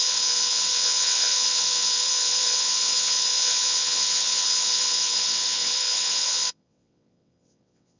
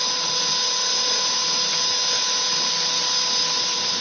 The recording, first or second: second